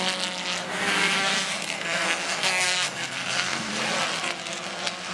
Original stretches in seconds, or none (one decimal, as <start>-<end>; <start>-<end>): 0.0-0.6; 3.7-5.1